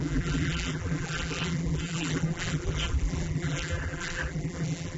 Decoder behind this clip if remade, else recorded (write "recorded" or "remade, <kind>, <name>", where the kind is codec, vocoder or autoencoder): remade, vocoder, BigVGAN v2